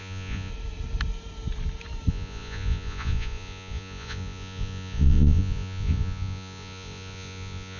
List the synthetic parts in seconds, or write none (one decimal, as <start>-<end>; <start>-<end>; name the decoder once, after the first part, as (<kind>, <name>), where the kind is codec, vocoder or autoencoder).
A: 0.0-0.5 (vocoder, Vocos); 2.1-7.8